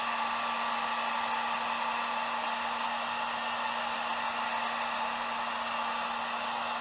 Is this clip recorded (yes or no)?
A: yes